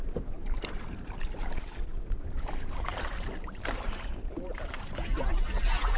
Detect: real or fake fake